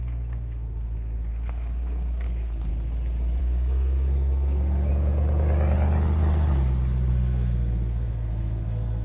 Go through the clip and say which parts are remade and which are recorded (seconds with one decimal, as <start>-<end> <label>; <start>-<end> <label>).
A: 0.0-2.7 remade; 2.7-3.4 recorded; 3.4-4.9 remade; 4.9-7.1 recorded; 7.1-9.0 remade